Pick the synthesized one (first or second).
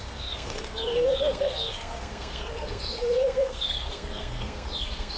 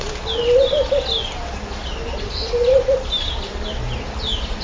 first